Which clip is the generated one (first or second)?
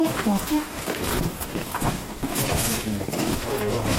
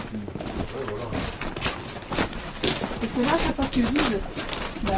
first